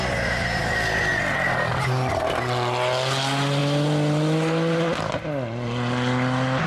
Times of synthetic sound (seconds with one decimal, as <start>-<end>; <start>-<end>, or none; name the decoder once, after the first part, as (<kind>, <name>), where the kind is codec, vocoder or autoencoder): none